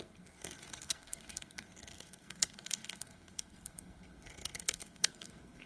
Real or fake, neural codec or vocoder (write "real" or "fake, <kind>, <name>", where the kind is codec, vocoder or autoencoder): fake, codec, SNAC